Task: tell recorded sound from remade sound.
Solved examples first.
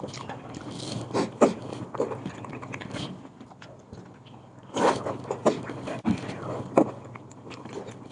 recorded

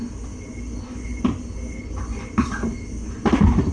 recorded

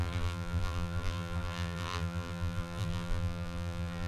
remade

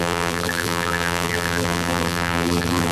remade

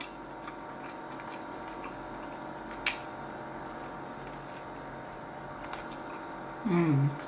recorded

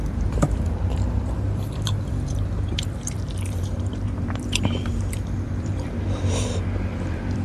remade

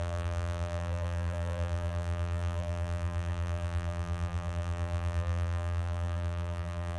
remade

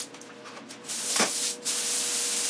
recorded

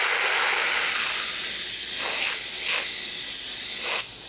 recorded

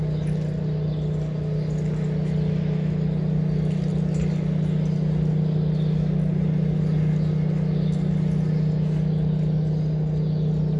recorded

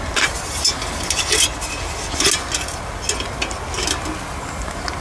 recorded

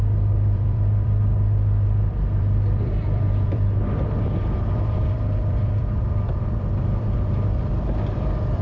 remade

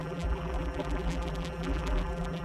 remade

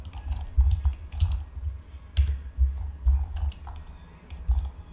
recorded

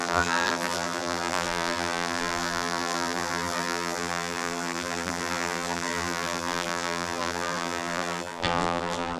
remade